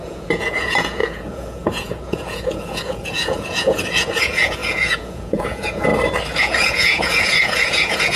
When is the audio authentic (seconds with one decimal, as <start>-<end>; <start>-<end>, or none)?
5.9-6.4